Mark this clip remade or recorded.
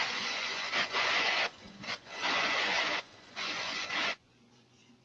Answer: remade